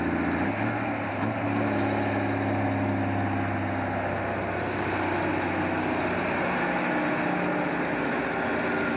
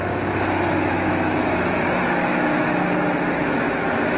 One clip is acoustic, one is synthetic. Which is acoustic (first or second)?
first